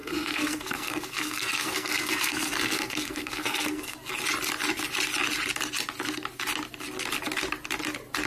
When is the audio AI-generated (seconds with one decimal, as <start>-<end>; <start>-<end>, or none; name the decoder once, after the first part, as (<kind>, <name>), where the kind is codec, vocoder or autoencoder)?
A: 0.0-4.1 (codec, SNAC)